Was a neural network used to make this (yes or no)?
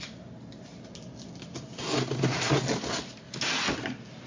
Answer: no